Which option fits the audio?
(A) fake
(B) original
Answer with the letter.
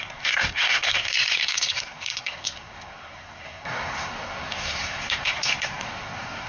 A